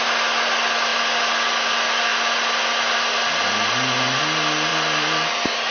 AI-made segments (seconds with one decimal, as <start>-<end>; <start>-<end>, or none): none